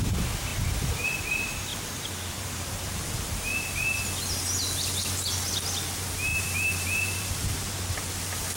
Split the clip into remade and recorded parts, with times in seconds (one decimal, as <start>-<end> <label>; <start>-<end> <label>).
0.0-1.7 recorded; 1.7-3.2 remade; 3.2-6.3 recorded; 6.3-8.0 remade; 8.0-8.6 recorded

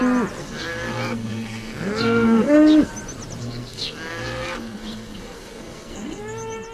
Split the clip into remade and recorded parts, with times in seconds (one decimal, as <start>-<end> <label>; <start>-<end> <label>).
0.0-0.4 recorded; 0.4-2.9 remade; 2.9-3.4 recorded; 3.4-6.2 remade; 6.2-6.7 recorded

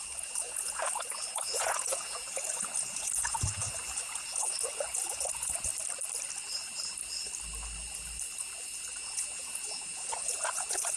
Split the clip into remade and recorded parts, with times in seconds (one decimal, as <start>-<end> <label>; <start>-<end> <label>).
0.0-5.7 remade; 5.7-9.0 recorded; 9.0-11.0 remade